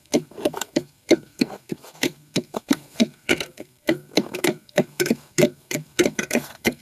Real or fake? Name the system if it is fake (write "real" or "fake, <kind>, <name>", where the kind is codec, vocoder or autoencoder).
fake, codec, SNAC